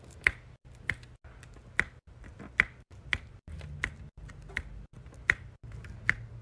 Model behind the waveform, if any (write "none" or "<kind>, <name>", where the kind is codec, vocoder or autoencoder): none